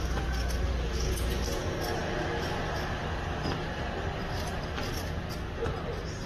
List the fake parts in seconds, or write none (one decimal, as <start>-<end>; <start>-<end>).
none